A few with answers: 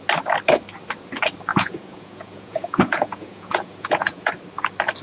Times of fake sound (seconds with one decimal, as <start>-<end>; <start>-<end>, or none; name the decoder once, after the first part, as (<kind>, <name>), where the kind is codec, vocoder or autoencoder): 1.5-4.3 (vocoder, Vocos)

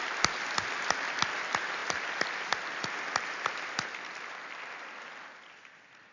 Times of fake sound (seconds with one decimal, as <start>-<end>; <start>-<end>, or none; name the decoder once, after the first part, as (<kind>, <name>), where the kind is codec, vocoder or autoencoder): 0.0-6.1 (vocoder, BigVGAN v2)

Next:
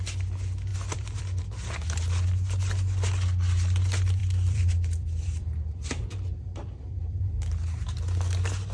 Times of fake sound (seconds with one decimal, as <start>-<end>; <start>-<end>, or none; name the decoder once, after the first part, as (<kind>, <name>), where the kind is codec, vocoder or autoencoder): 0.7-1.4 (vocoder, BigVGAN v2); 4.2-7.2

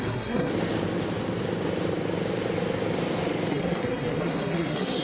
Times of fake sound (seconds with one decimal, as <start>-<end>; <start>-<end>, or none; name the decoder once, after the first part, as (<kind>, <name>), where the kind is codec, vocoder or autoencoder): 0.0-0.5 (codec, SNAC); 3.5-5.0

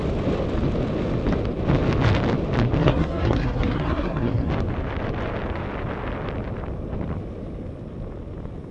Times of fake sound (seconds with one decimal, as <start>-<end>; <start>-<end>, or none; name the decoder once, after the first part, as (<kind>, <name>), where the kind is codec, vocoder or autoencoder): 2.8-4.5 (codec, SNAC)

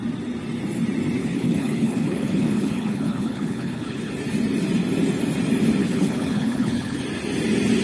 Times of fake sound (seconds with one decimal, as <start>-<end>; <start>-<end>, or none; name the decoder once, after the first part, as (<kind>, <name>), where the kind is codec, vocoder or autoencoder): 1.2-4.1 (codec, HILCodec); 5.8-7.0

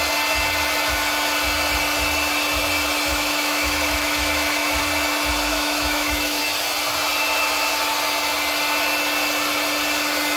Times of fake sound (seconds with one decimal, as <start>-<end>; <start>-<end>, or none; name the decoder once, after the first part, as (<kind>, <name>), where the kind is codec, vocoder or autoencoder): 3.1-4.8 (autoencoder, DAC-VAE); 5.5-6.4

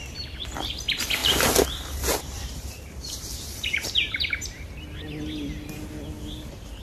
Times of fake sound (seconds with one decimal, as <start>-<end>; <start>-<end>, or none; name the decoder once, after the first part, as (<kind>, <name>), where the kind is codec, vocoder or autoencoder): 1.2-4.7 (vocoder, BigVGAN v2)